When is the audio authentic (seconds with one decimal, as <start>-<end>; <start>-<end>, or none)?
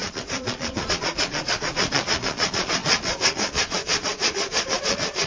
none